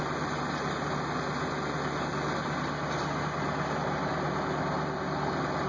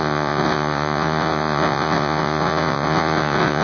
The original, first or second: first